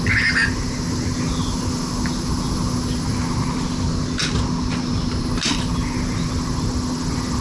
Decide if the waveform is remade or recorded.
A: recorded